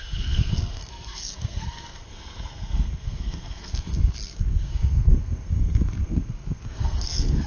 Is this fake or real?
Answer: fake